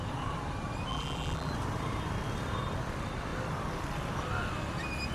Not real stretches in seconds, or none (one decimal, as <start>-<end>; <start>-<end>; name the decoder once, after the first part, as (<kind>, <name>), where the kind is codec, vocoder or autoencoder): 0.9-1.5 (vocoder, BigVGAN v2)